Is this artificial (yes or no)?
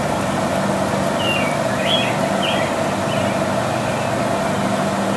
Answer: no